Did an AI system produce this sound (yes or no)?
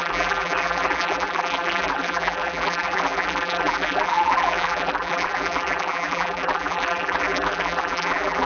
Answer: yes